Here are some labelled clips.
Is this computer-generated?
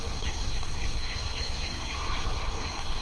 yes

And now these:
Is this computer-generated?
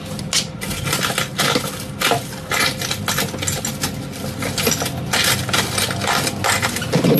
no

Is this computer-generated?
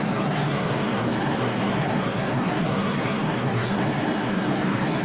yes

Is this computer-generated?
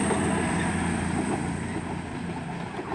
no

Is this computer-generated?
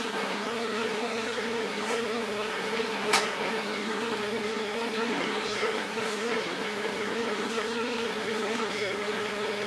yes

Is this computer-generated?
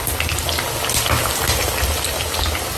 no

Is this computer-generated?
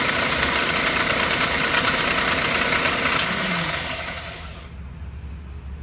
no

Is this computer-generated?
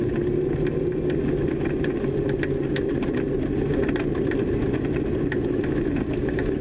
no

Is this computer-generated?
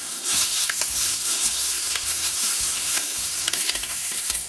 yes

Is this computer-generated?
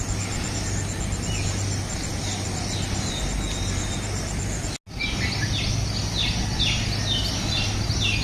no